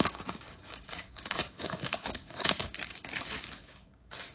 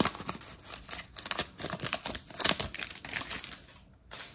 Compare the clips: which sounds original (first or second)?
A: second